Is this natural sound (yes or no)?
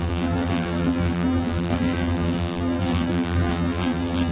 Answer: no